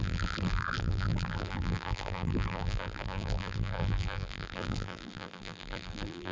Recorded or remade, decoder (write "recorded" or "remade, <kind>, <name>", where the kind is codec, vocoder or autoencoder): remade, vocoder, BigVGAN v2